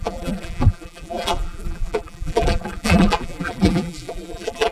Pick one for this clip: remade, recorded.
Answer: remade